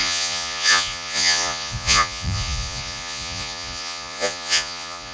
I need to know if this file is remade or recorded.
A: remade